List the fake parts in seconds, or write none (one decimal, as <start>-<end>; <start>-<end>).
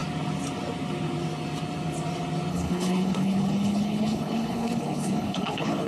2.5-5.9